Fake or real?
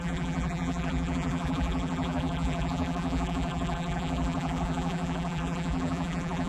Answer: fake